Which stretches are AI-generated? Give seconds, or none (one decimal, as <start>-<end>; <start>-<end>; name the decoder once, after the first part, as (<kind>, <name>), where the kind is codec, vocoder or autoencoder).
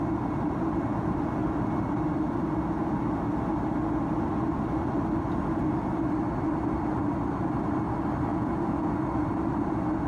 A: 8.3-8.9 (vocoder, Vocos)